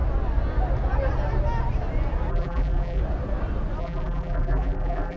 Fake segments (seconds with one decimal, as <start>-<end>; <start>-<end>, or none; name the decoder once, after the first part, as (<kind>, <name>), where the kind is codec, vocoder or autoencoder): 2.3-3.0 (vocoder, BigVGAN v2); 3.8-5.2